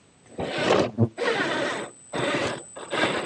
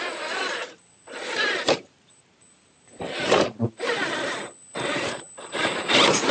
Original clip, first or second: first